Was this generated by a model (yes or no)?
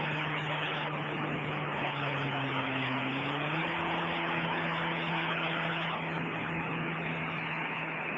yes